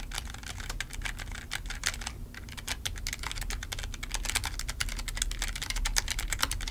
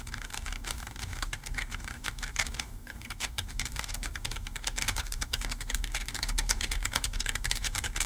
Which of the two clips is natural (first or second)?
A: first